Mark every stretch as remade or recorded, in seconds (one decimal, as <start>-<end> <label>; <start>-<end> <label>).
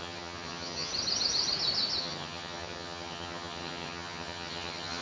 0.0-0.9 remade; 0.9-2.0 recorded; 2.0-5.0 remade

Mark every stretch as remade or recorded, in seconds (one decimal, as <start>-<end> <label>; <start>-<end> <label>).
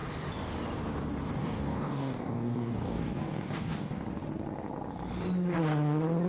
0.0-1.4 recorded; 1.4-4.0 remade; 4.0-6.3 recorded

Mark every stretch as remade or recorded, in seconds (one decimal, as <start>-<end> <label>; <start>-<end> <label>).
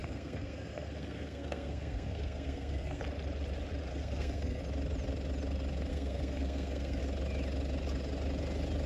0.0-3.0 remade; 3.0-3.9 recorded; 3.9-4.6 remade; 4.6-5.9 recorded; 5.9-7.0 remade; 7.0-8.9 recorded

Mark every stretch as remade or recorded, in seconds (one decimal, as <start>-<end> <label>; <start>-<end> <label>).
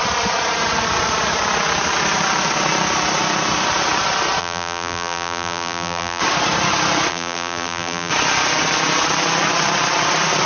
0.0-4.4 recorded; 4.4-6.2 remade; 6.2-7.1 recorded; 7.1-8.1 remade; 8.1-10.5 recorded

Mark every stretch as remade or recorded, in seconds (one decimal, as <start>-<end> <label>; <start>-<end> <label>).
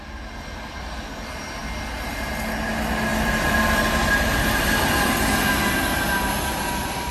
0.0-7.1 recorded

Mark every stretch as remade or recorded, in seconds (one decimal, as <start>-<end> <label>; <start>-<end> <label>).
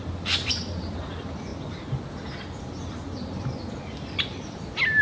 0.0-5.0 recorded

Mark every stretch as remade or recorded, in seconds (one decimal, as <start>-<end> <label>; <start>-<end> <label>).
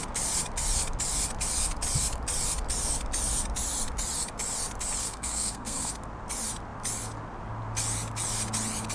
0.0-5.0 recorded; 5.0-5.9 remade; 5.9-8.9 recorded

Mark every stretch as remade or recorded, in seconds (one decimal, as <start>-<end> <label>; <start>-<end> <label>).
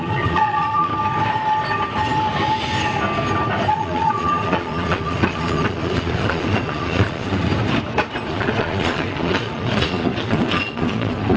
0.0-0.9 remade; 0.9-3.7 recorded; 3.7-7.5 remade; 7.5-8.3 recorded; 8.3-11.4 remade